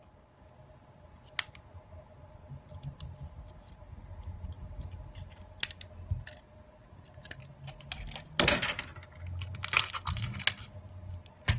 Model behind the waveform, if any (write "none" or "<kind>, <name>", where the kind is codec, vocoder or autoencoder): none